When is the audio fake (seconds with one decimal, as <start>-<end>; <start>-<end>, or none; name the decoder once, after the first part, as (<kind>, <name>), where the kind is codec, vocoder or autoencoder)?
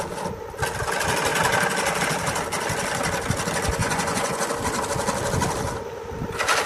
3.8-4.5 (vocoder, Vocos)